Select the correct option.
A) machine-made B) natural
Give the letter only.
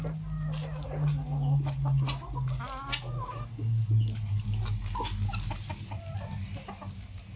B